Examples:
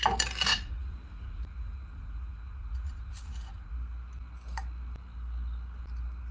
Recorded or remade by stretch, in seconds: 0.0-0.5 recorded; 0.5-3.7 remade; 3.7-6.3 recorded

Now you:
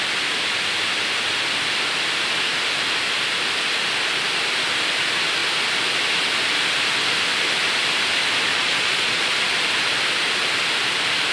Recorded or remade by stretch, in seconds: 0.0-8.5 recorded; 8.5-9.3 remade; 9.3-11.3 recorded